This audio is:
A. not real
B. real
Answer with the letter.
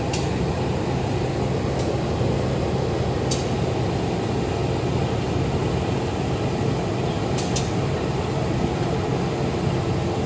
B